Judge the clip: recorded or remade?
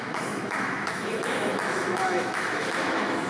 remade